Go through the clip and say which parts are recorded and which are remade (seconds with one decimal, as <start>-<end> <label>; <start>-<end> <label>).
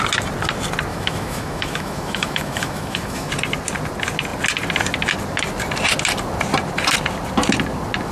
0.0-0.9 recorded; 0.9-3.3 remade; 3.3-8.1 recorded